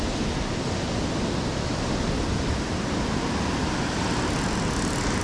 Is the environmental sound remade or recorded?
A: recorded